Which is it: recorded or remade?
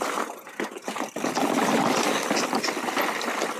recorded